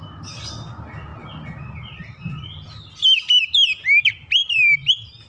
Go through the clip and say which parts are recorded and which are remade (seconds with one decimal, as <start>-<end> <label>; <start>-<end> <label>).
0.0-5.3 recorded